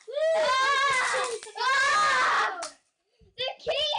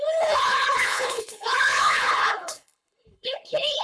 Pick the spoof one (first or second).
second